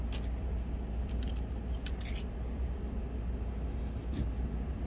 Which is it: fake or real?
real